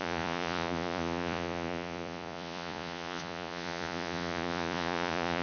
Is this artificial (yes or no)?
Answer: yes